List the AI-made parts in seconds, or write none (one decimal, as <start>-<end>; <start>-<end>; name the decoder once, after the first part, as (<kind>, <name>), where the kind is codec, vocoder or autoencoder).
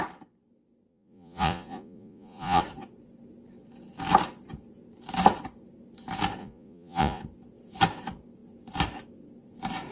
0.9-2.6 (vocoder, Vocos); 6.4-7.2